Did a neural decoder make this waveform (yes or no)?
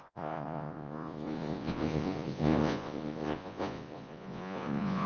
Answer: yes